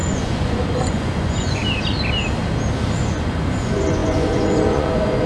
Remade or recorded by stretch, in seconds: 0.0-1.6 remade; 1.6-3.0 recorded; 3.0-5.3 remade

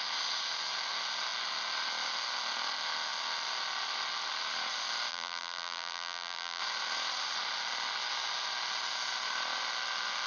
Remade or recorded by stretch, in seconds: 0.0-5.1 recorded; 5.1-6.6 remade; 6.6-10.3 recorded

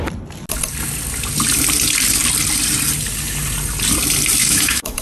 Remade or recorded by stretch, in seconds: 0.0-4.4 recorded; 4.4-5.0 remade

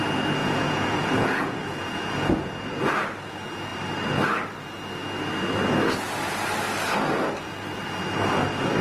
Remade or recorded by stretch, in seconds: 0.0-0.4 recorded; 0.4-2.5 remade; 2.5-8.8 recorded